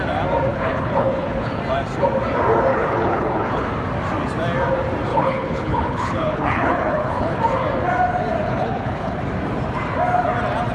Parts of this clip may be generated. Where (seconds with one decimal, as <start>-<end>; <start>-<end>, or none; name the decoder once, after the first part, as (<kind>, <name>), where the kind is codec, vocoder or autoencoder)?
0.5-1.6 (codec, HILCodec); 2.7-3.7; 5.1-7.4; 8.4-9.2